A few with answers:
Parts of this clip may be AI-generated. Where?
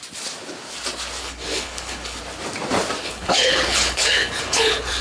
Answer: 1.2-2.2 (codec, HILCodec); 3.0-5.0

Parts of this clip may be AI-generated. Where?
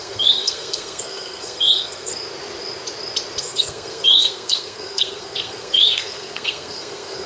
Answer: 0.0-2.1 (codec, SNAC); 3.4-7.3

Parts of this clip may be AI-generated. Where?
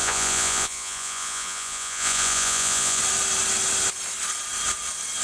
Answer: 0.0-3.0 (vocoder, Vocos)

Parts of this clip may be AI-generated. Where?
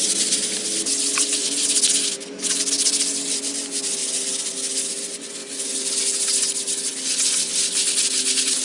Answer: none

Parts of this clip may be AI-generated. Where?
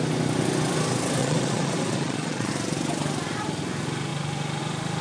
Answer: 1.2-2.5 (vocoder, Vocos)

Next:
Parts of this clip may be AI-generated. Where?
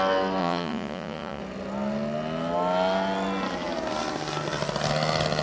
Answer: 0.4-1.4 (vocoder, Vocos)